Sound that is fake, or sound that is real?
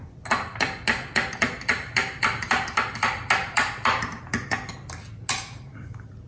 real